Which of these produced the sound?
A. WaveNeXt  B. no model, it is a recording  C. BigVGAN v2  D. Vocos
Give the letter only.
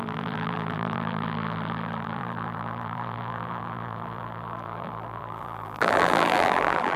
C